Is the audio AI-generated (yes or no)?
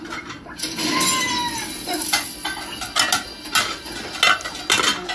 no